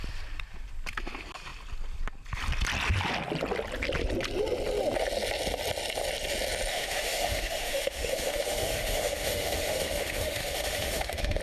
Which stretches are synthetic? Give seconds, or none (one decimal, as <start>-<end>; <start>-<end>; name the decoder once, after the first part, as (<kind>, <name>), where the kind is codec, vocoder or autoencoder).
6.7-11.4 (autoencoder, DAC-VAE)